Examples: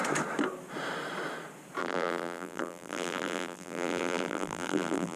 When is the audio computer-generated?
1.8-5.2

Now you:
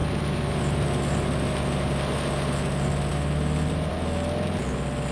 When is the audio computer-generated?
0.0-3.1